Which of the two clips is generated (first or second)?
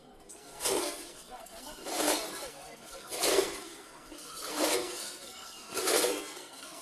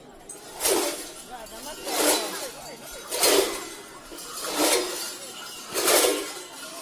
first